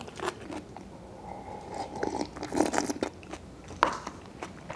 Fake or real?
real